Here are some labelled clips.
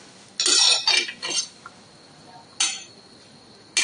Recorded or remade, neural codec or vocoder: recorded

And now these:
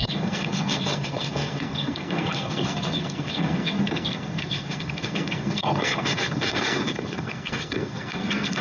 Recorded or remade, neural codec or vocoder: remade, codec, SNAC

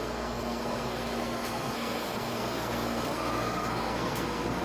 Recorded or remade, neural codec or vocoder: remade, codec, SNAC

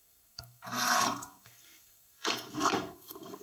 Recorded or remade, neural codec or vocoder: remade, codec, SNAC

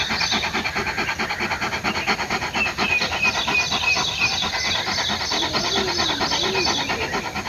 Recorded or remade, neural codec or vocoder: recorded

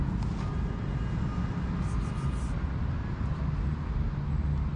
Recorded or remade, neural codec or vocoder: recorded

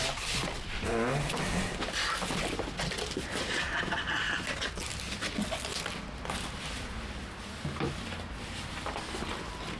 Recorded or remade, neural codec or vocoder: recorded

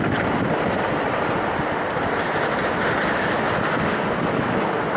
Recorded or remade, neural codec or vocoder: recorded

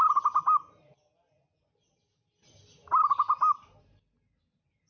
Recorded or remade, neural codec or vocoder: recorded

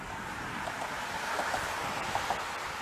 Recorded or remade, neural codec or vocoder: recorded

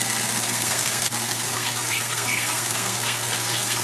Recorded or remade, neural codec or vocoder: remade, codec, SNAC